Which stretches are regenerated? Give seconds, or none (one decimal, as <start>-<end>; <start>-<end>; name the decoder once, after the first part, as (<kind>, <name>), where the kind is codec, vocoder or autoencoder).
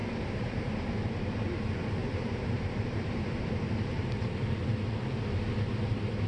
0.0-1.4 (vocoder, BigVGAN v2); 2.0-4.3